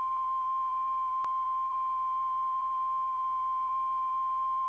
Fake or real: fake